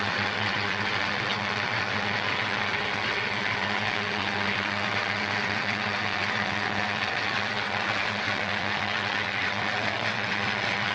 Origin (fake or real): fake